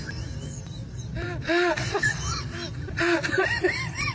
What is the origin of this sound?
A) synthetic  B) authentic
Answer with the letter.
B